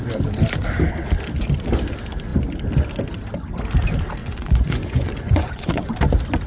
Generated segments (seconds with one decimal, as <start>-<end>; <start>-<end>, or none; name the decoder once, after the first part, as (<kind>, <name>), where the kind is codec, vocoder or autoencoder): 4.2-5.9 (vocoder, Vocos)